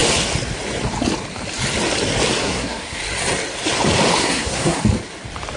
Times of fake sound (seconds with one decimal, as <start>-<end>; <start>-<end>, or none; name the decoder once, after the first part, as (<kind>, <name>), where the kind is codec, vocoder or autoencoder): 2.4-3.0 (codec, SNAC); 4.2-4.8